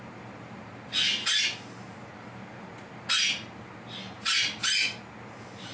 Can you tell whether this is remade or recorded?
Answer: recorded